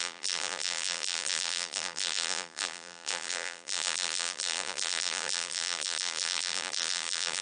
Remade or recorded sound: remade